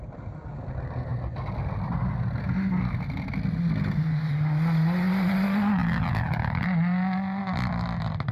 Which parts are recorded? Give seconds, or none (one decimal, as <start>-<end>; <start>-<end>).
0.0-8.3